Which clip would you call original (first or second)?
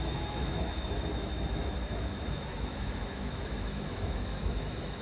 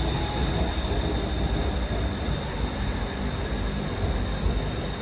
second